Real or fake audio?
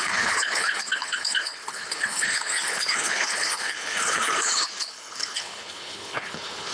fake